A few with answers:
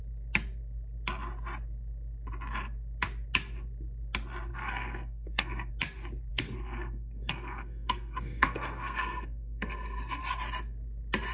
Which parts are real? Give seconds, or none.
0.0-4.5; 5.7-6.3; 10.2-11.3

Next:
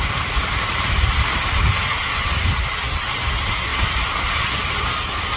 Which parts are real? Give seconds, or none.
3.7-4.8

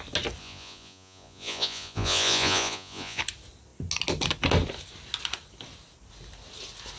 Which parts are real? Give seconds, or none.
0.0-0.4; 3.2-7.0

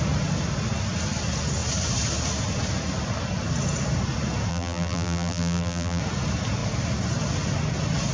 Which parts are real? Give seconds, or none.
0.0-4.5; 6.0-8.1

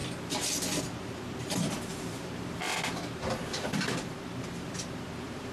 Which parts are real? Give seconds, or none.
0.0-0.8

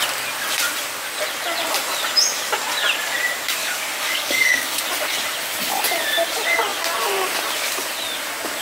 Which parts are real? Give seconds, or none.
0.0-3.6; 4.8-8.6